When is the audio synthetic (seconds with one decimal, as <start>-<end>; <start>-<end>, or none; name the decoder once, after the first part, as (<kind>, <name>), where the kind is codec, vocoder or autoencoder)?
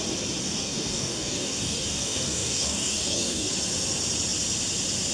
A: 0.4-3.5 (codec, DAC)